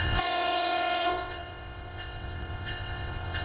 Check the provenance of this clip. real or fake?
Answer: fake